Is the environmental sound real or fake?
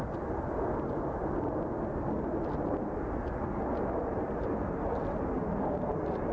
real